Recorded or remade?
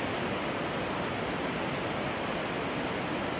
recorded